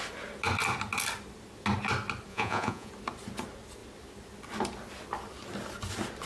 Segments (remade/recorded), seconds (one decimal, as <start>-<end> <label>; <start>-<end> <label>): 0.0-2.3 recorded; 2.3-2.9 remade; 2.9-6.3 recorded